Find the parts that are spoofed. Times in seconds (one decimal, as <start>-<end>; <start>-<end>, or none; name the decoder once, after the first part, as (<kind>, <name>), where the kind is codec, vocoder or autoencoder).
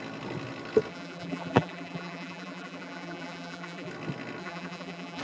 0.9-3.9 (vocoder, BigVGAN v2); 4.4-5.2